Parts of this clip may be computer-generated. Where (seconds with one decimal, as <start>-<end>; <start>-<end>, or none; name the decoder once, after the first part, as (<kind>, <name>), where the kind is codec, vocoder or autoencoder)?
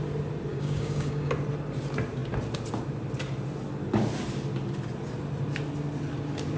0.5-1.3 (codec, DAC)